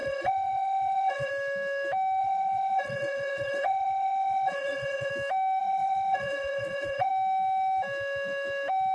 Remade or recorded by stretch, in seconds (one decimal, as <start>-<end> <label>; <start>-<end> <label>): 0.0-1.3 remade; 1.3-2.2 recorded; 2.2-5.1 remade; 5.1-5.6 recorded; 5.6-7.1 remade; 7.1-8.9 recorded